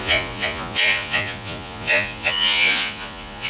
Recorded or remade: remade